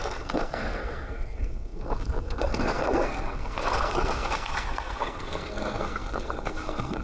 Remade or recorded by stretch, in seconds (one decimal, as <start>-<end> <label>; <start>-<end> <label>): 0.0-7.0 remade